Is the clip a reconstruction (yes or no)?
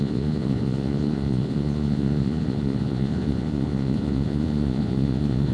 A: yes